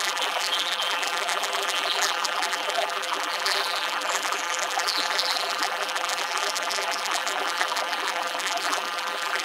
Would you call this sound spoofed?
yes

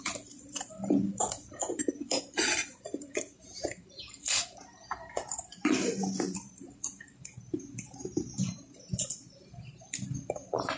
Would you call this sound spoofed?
yes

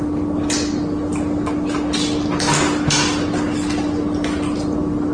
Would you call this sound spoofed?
no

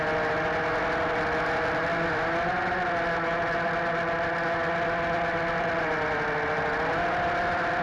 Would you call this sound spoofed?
no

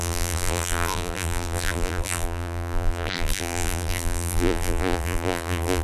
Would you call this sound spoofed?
yes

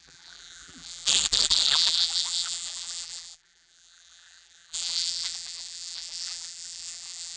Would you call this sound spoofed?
yes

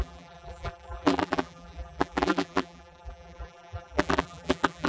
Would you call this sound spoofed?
yes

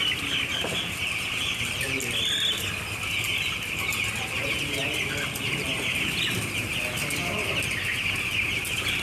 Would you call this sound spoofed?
no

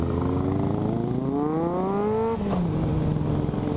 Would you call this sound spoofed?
no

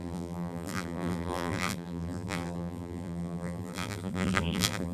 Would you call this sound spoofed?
yes